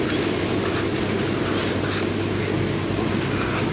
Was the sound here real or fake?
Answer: real